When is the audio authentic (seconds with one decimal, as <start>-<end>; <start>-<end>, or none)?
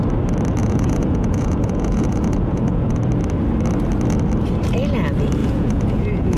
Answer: 0.0-0.6; 3.0-5.4